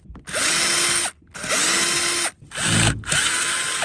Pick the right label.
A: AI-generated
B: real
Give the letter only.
B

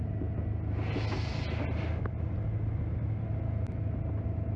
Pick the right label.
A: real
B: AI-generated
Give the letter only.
A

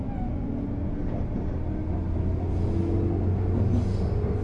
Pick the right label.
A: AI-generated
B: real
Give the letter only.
B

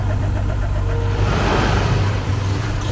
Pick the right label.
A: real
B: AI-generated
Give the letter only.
B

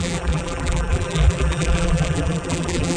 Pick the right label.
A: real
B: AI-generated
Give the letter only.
B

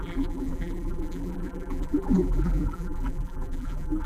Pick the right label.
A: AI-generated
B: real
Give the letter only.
A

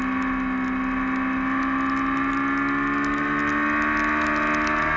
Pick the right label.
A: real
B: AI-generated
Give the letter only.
A